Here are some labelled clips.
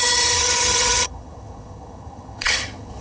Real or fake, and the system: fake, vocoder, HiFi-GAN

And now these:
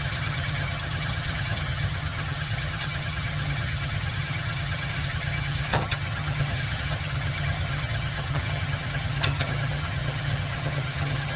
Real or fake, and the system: fake, vocoder, HiFi-GAN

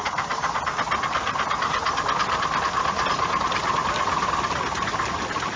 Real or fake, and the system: real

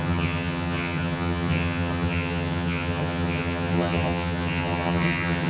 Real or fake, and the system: fake, vocoder, HiFi-GAN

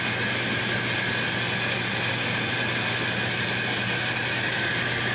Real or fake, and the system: real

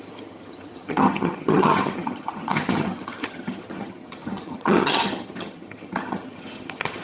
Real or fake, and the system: fake, vocoder, HiFi-GAN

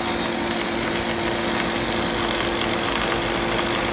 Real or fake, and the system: real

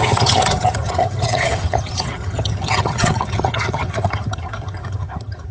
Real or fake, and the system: fake, vocoder, HiFi-GAN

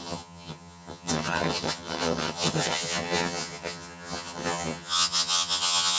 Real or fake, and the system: fake, vocoder, HiFi-GAN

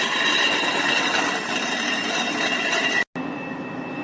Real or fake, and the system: real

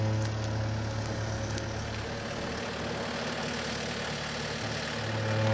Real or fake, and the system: real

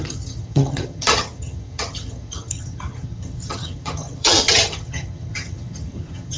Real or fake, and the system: fake, vocoder, HiFi-GAN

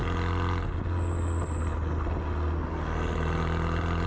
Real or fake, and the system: real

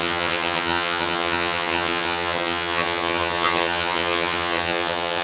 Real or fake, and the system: fake, vocoder, HiFi-GAN